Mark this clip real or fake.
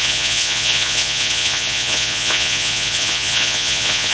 fake